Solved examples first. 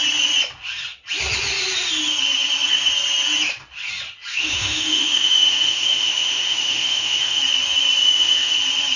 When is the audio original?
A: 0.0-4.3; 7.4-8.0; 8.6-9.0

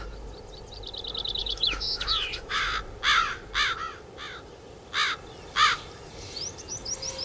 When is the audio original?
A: 0.0-1.4; 2.6-7.2